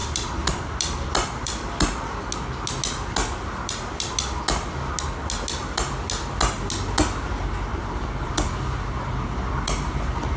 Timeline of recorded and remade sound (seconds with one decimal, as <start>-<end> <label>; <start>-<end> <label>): 0.0-2.3 remade; 2.3-3.2 recorded; 3.2-4.1 remade; 4.1-7.7 recorded; 7.7-8.5 remade; 8.5-10.4 recorded